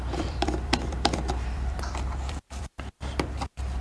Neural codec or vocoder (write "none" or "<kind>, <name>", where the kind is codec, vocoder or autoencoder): vocoder, BigVGAN v2